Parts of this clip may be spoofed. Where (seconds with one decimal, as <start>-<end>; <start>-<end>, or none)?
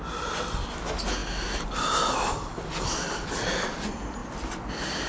none